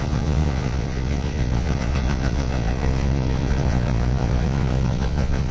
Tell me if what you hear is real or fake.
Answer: fake